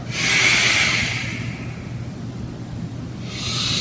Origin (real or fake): real